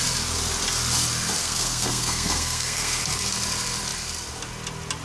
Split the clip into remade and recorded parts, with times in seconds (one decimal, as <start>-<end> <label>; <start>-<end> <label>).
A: 0.0-1.4 recorded; 1.4-3.0 remade; 3.0-5.0 recorded